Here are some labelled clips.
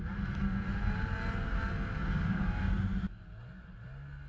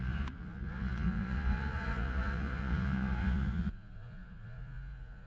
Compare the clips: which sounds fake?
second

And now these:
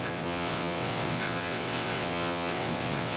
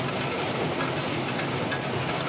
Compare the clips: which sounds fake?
first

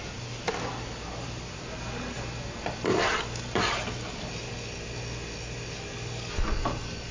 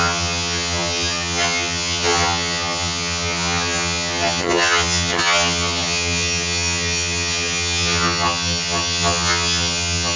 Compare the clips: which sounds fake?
second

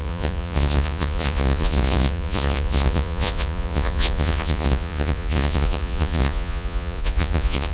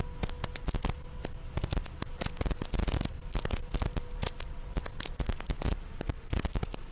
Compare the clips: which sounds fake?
first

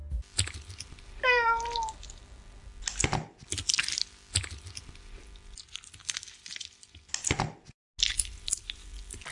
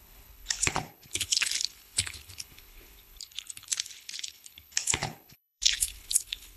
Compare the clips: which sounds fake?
second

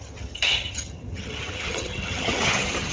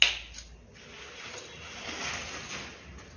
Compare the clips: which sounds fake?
first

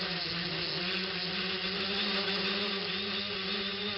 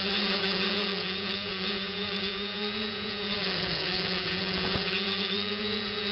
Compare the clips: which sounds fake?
second